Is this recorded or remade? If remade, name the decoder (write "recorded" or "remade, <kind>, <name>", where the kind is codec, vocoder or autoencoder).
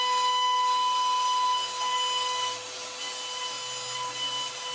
recorded